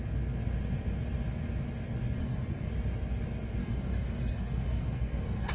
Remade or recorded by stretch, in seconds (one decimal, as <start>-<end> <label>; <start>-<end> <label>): 0.0-2.2 recorded; 2.2-2.7 remade; 2.7-3.6 recorded; 3.6-5.5 remade